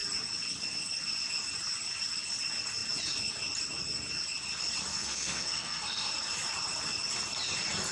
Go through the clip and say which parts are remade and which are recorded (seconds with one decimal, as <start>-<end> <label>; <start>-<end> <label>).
0.0-4.9 recorded; 4.9-6.1 remade; 6.1-7.9 recorded